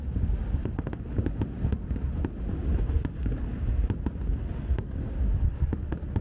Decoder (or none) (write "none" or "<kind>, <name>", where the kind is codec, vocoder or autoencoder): none